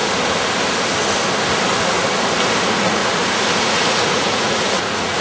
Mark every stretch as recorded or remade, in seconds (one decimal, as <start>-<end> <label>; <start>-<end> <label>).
0.0-2.6 recorded; 2.6-3.0 remade; 3.0-3.6 recorded; 3.6-5.2 remade